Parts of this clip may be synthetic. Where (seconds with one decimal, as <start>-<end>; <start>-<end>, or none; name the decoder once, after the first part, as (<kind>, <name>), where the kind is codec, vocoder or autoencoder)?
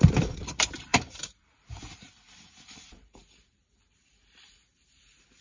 0.0-5.4 (vocoder, BigVGAN v2)